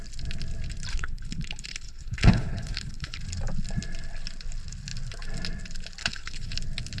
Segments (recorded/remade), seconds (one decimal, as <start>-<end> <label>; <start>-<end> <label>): 0.0-0.9 recorded; 0.9-3.2 remade; 3.2-6.0 recorded; 6.0-6.5 remade; 6.5-7.0 recorded